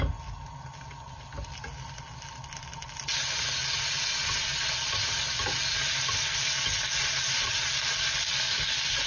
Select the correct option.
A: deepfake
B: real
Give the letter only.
B